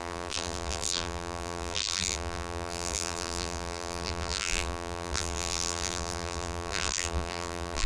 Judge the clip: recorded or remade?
remade